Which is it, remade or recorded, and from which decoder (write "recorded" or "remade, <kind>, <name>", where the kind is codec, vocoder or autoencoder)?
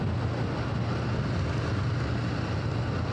recorded